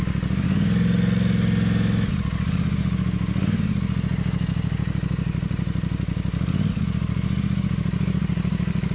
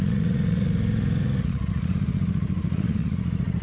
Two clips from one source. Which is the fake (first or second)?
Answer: second